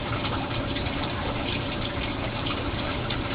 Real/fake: fake